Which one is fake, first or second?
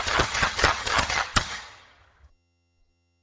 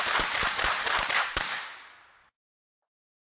first